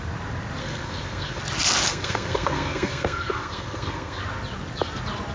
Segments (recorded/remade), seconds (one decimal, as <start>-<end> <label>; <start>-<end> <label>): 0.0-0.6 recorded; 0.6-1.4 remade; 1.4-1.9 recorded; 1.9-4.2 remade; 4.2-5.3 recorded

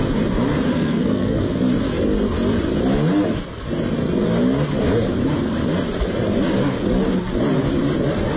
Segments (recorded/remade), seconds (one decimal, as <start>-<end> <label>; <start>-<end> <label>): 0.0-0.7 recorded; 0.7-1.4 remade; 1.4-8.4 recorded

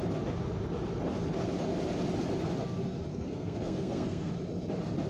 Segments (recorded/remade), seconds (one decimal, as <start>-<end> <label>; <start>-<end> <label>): 0.0-3.1 recorded; 3.1-4.3 remade; 4.3-5.1 recorded

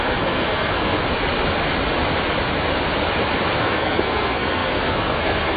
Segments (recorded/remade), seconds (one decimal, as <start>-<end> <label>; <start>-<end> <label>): 0.0-1.0 remade; 1.0-3.6 recorded; 3.6-5.6 remade

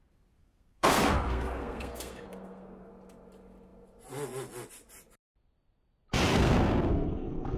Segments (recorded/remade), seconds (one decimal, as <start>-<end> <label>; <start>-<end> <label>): 0.0-0.4 recorded; 0.4-2.9 remade; 2.9-6.3 recorded; 6.3-7.6 remade